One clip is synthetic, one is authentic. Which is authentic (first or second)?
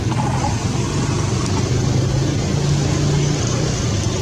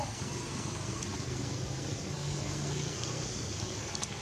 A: first